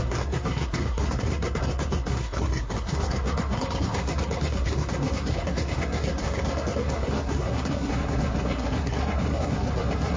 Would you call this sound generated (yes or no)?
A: yes